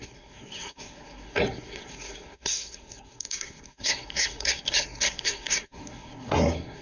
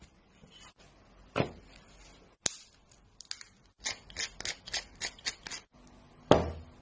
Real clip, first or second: second